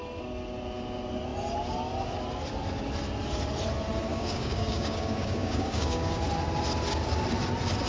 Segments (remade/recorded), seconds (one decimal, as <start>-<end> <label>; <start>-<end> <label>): 0.0-4.1 recorded; 4.1-6.2 remade; 6.2-7.9 recorded